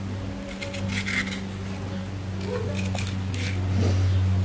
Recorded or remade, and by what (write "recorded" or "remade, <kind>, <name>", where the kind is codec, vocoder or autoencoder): recorded